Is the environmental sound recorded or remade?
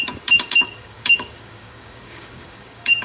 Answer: remade